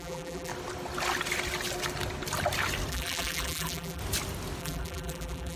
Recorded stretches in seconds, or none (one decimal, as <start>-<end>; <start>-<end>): 0.5-2.9; 4.0-4.6